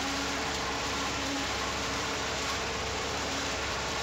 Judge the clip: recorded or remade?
remade